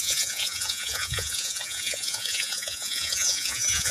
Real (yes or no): no